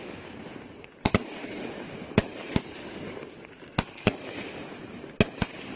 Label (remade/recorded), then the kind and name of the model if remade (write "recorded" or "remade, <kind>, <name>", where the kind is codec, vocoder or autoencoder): remade, vocoder, BigVGAN v2